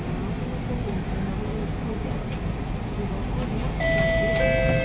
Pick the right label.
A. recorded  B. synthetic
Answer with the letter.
A